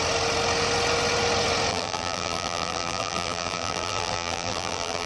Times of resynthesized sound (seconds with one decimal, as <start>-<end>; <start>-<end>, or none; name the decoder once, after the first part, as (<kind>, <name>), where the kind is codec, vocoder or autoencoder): 1.7-5.1 (vocoder, BigVGAN v2)